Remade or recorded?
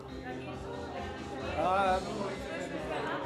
recorded